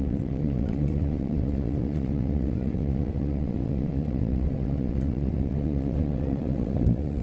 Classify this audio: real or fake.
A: fake